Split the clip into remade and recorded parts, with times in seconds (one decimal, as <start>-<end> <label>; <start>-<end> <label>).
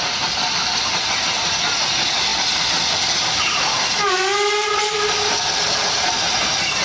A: 0.0-6.8 recorded